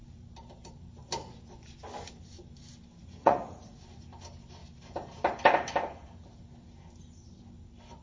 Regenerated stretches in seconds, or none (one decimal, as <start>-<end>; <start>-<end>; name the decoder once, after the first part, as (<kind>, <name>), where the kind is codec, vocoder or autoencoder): 3.0-3.8 (vocoder, Vocos)